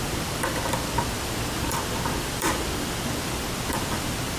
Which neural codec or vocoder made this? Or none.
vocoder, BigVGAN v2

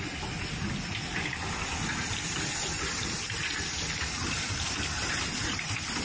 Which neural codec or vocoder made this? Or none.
none